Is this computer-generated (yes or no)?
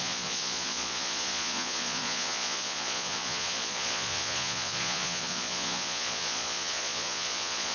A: yes